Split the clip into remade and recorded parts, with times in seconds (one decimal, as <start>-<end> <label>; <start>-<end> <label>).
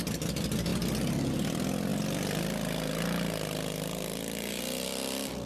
0.0-5.5 recorded